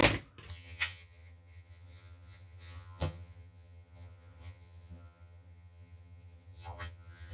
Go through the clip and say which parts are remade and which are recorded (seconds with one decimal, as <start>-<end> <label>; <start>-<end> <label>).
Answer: 0.0-0.5 recorded; 0.5-7.3 remade